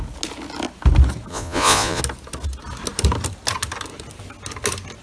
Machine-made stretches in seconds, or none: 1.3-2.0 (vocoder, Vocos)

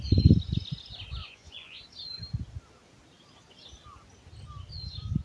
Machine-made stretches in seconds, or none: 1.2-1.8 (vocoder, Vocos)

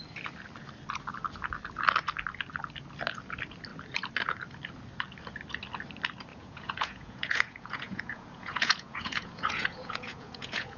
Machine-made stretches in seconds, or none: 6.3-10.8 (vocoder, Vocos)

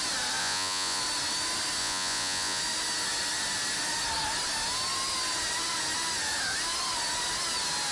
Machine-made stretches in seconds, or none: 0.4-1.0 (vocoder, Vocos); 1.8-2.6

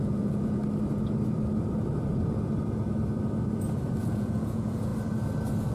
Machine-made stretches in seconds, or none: 0.0-0.6 (vocoder, Vocos); 4.0-4.9